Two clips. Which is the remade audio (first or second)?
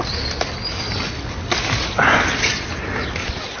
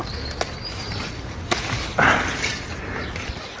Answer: second